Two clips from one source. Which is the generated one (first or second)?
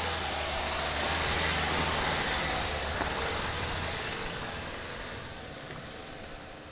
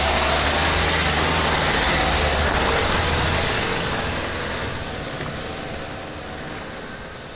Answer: first